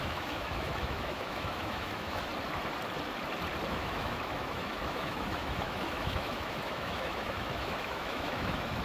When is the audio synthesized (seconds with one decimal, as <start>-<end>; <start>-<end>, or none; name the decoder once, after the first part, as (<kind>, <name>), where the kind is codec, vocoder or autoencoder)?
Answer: 0.0-2.3 (autoencoder, DAC-VAE); 3.7-8.8